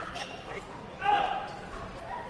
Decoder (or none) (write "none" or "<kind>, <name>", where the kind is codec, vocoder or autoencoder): none